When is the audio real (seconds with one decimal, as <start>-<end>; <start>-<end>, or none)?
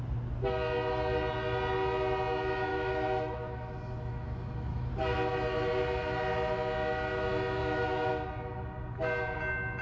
0.0-2.7; 4.9-7.6; 8.1-9.8